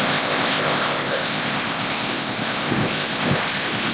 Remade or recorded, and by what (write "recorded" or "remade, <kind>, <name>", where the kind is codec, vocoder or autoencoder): remade, codec, ZipCodec